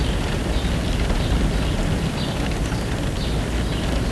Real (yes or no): yes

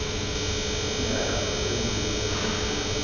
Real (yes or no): yes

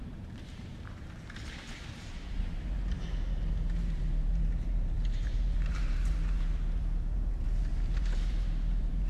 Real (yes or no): no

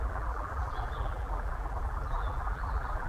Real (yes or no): no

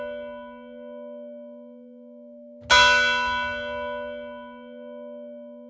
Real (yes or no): yes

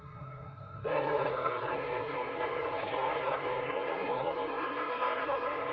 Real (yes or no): no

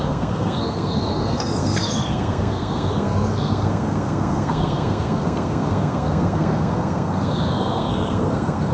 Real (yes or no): no